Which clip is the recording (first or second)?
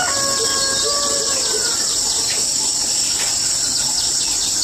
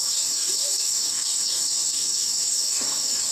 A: first